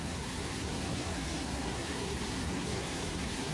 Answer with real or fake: fake